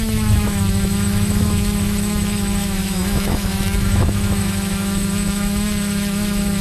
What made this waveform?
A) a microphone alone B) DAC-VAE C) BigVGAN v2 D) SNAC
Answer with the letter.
B